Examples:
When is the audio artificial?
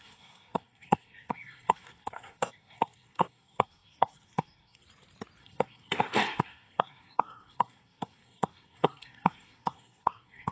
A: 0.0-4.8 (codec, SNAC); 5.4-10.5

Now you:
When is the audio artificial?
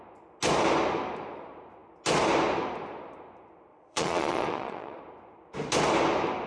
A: 3.7-5.0 (vocoder, Vocos)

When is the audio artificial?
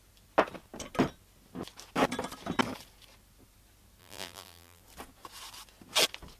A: 4.0-4.8 (vocoder, BigVGAN v2)